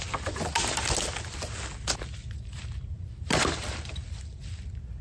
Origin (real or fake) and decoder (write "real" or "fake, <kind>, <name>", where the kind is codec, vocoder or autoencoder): real